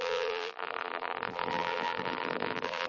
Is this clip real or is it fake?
fake